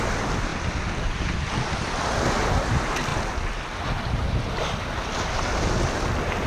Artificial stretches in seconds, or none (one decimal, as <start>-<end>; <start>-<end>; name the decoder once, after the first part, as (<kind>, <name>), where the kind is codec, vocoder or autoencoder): none